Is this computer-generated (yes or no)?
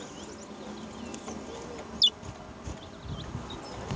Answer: no